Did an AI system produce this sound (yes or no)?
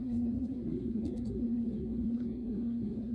yes